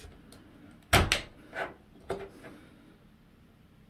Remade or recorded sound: recorded